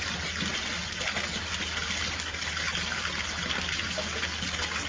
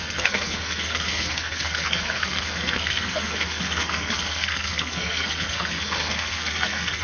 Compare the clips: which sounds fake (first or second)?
second